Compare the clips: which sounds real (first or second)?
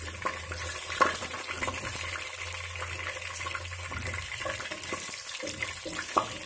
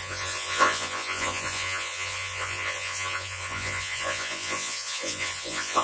first